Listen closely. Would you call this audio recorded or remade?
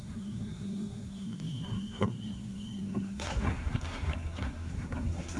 remade